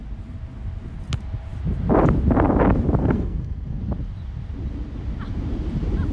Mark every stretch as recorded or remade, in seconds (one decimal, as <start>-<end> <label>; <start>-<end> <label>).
0.0-3.0 recorded; 3.0-3.8 remade; 3.8-6.1 recorded